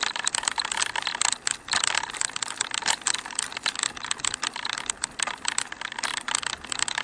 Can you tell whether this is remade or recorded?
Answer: recorded